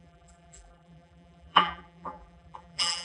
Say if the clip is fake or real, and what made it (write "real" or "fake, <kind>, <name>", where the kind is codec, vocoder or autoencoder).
fake, vocoder, BigVGAN v2